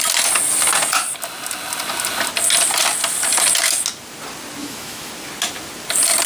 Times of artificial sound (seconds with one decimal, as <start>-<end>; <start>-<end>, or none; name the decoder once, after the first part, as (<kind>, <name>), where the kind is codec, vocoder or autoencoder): 4.6-5.1 (autoencoder, DAC-VAE)